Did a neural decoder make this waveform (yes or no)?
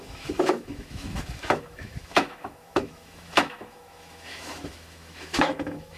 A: yes